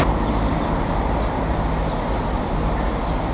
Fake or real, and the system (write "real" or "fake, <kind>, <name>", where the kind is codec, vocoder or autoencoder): real